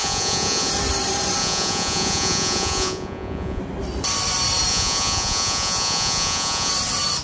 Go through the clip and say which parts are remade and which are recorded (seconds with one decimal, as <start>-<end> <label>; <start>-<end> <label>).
0.0-0.7 remade; 0.7-1.4 recorded; 1.4-3.6 remade; 3.6-4.7 recorded; 4.7-6.7 remade; 6.7-7.2 recorded